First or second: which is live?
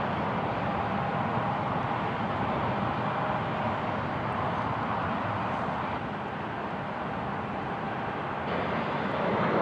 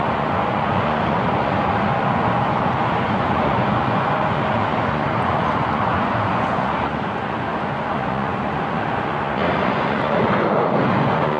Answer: first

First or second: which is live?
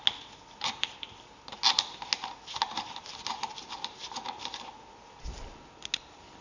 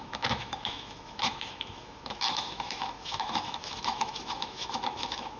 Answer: first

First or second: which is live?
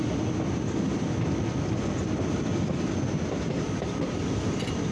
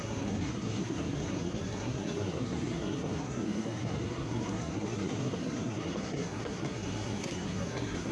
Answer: first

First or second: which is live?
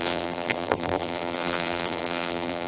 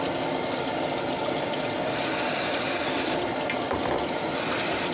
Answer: second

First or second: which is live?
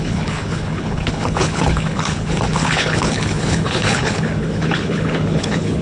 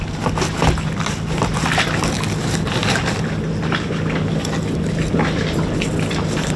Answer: second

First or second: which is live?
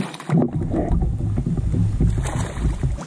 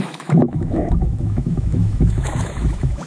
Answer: first